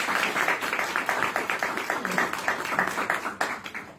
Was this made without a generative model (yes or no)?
yes